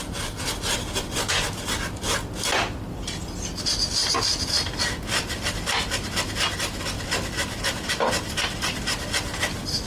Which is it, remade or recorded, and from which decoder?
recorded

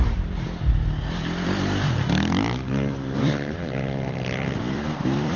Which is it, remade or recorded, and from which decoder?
remade, vocoder, BigVGAN v2